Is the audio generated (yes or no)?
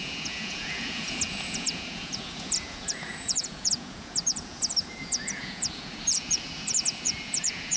yes